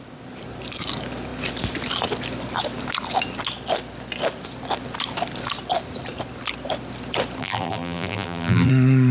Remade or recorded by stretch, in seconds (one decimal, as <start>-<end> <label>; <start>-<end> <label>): 0.0-7.4 recorded; 7.4-8.7 remade; 8.7-9.1 recorded